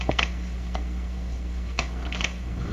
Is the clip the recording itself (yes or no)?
no